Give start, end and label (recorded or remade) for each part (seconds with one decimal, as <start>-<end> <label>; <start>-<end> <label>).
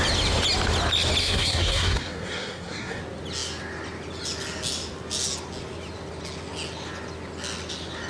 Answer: 0.0-1.2 recorded; 1.2-3.0 remade; 3.0-8.1 recorded